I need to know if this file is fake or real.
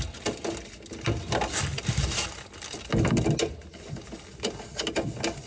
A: real